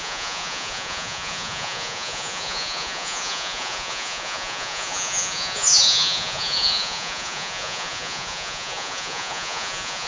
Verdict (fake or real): fake